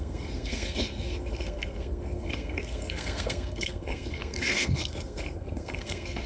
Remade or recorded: remade